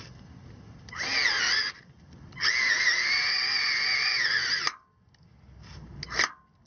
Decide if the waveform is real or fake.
real